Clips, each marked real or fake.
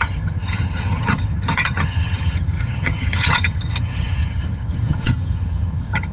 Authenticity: fake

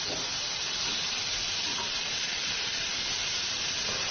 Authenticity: real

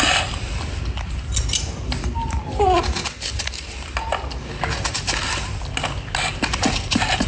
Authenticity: real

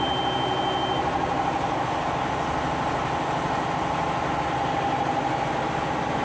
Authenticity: real